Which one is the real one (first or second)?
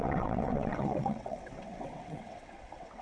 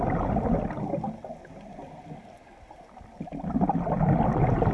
second